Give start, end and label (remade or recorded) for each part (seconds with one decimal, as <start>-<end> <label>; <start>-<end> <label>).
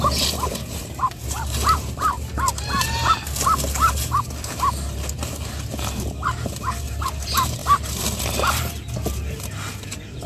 0.0-0.5 recorded; 0.5-2.3 remade; 2.3-10.3 recorded